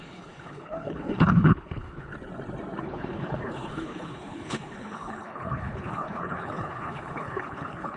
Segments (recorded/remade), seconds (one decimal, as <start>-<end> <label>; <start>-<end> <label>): 0.0-2.1 remade; 2.1-2.8 recorded; 2.8-8.0 remade